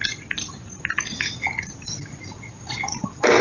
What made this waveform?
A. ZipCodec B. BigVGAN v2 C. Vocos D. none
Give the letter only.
D